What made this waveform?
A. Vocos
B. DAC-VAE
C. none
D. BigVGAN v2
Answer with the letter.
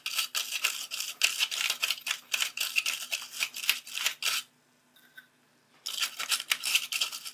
C